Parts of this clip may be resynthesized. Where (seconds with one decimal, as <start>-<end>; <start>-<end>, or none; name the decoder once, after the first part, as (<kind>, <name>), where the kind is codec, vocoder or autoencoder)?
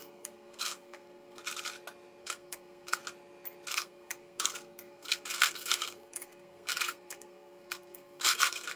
0.0-1.4 (codec, SNAC); 2.2-3.0; 3.7-8.8